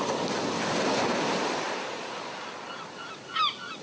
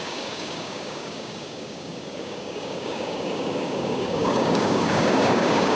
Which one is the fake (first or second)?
second